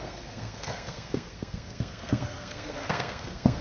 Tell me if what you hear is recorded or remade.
remade